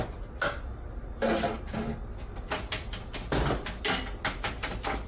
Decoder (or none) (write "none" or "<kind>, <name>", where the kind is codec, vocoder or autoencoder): none